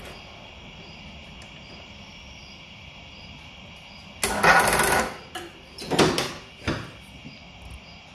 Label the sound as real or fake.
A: real